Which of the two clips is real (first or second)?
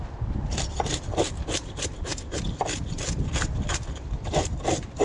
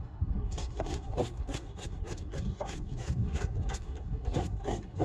first